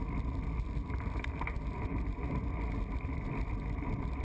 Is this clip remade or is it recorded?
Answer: remade